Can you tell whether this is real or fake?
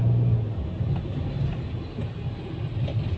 real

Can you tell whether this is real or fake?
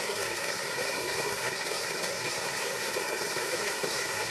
fake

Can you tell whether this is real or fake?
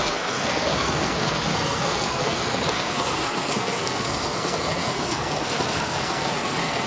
fake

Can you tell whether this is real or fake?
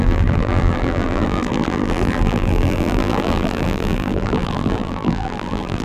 fake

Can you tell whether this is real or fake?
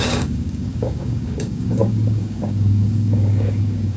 fake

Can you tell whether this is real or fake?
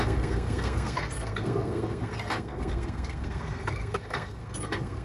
fake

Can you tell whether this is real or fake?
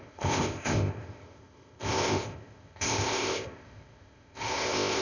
fake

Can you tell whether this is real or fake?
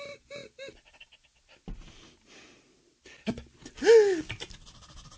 real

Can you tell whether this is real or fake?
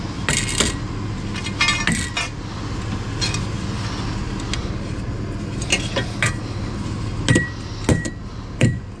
real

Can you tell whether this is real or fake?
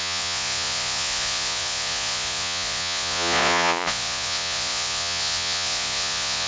fake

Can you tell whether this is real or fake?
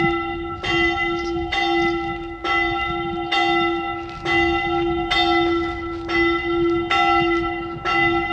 real